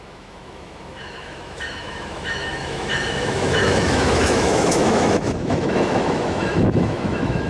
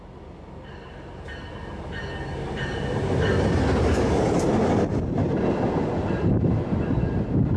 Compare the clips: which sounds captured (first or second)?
second